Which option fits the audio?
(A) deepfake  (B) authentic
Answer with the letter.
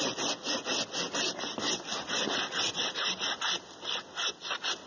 B